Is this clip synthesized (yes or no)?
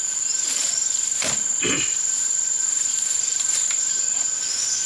no